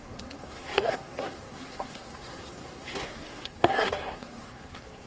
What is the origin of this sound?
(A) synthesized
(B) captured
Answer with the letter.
A